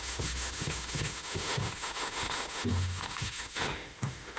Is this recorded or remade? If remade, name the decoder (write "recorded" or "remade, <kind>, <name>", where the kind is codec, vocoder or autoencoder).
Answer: remade, autoencoder, DAC-VAE